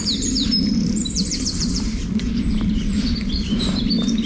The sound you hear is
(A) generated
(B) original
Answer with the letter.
A